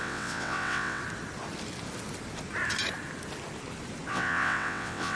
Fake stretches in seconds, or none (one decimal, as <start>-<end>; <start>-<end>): 0.0-1.0; 4.1-5.2